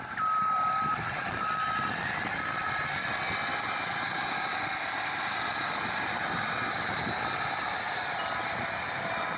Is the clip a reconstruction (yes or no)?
no